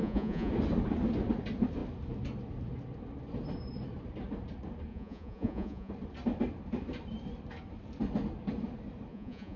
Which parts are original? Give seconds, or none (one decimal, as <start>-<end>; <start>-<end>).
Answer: 0.5-4.9; 5.9-9.1